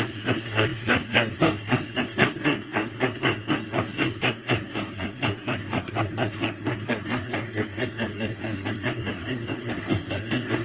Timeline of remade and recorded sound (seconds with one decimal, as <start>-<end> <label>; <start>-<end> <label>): 0.0-10.6 remade